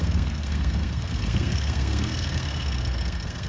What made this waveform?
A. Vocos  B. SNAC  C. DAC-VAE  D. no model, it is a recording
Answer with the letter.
B